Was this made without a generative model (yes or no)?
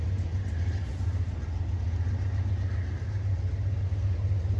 yes